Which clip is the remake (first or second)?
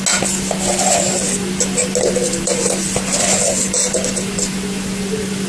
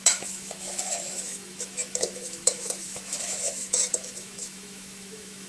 second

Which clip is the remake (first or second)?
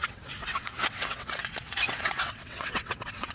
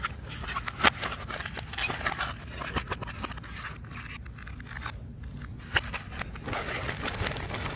first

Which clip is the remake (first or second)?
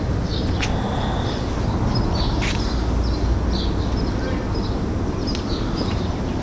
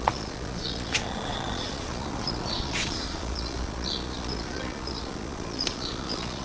second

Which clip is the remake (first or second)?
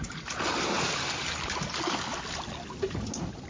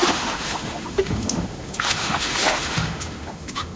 second